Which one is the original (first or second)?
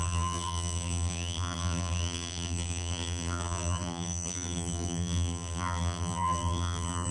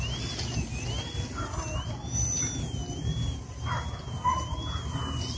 second